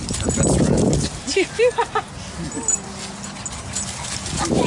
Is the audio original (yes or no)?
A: yes